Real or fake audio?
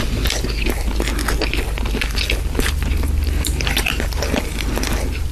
real